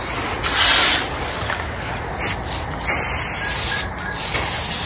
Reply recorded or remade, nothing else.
recorded